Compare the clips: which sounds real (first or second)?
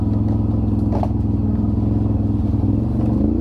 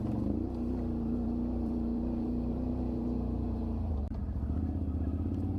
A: first